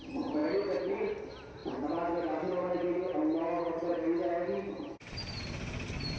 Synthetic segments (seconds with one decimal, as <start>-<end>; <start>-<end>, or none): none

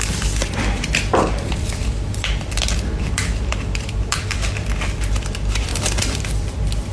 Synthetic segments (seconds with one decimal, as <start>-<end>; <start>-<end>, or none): 0.0-5.7; 6.3-6.9

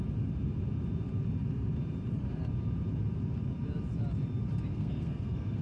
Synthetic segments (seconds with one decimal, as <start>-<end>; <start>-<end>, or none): 4.7-5.6

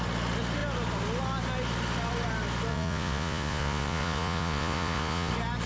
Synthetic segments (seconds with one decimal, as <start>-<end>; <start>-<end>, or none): 2.7-5.3